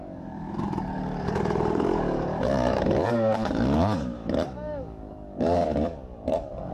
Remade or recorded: remade